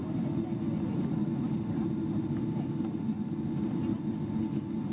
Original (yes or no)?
yes